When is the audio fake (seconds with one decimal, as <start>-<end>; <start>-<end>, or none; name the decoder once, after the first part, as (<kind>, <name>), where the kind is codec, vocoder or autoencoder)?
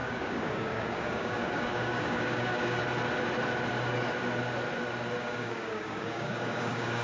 0.0-2.8 (codec, DAC); 5.2-7.0